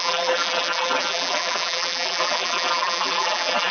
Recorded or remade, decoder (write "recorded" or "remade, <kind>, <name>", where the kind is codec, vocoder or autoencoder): remade, vocoder, BigVGAN v2